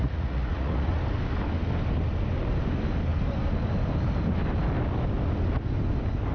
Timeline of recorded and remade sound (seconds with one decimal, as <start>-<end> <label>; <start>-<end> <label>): 0.0-0.9 remade; 0.9-6.3 recorded